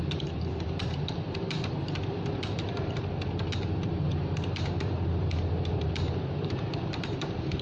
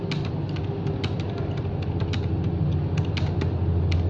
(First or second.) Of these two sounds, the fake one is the first